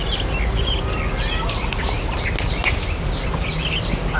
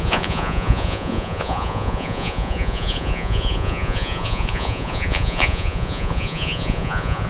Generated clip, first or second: second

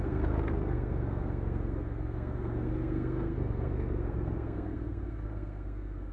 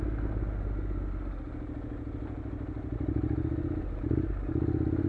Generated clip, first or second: first